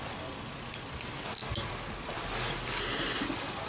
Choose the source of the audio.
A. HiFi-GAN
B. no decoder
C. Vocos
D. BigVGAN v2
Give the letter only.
B